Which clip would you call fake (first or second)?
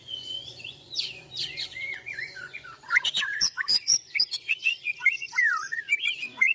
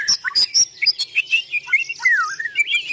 first